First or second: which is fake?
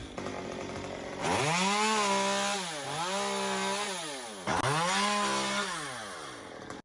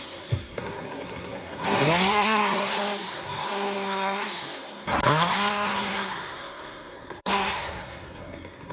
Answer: second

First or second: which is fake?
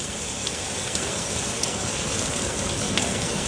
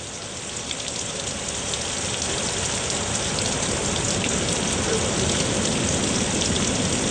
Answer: first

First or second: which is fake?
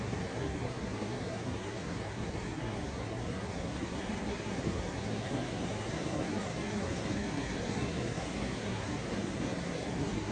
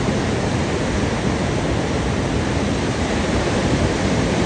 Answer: first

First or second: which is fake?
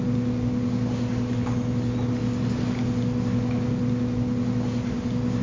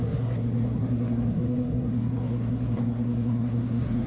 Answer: second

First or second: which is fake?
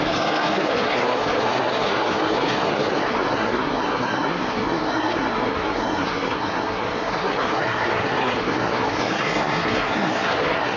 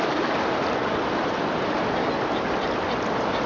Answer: first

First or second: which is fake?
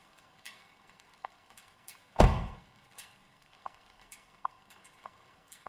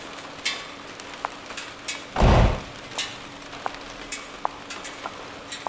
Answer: first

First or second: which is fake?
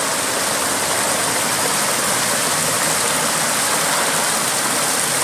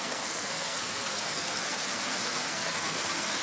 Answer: second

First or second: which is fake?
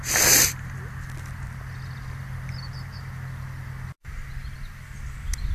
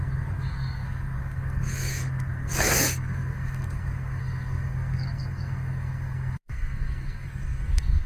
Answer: second